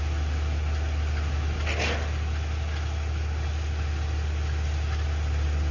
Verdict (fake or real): real